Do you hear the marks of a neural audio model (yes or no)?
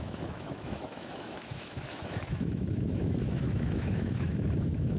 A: yes